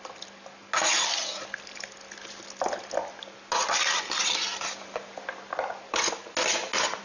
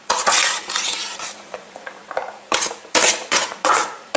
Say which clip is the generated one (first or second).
second